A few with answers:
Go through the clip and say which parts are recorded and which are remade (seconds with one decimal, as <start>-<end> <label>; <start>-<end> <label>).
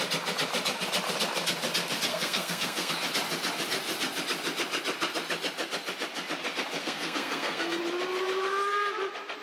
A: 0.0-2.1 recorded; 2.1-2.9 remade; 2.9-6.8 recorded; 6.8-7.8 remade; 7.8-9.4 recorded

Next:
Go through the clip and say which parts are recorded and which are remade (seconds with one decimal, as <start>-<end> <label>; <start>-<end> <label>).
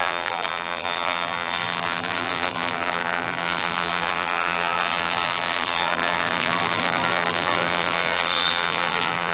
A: 0.0-9.3 remade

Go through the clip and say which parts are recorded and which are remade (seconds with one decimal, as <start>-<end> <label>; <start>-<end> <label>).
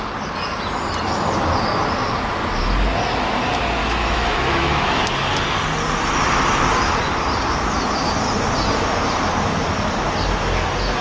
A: 0.0-3.8 recorded; 3.8-5.0 remade; 5.0-11.0 recorded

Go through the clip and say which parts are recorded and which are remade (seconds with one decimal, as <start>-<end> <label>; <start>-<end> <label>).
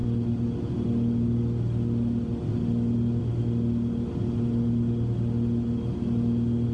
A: 0.0-6.7 recorded